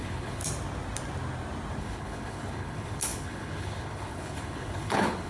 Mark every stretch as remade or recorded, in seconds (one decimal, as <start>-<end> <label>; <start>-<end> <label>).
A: 0.0-0.4 remade; 0.4-1.8 recorded; 1.8-5.3 remade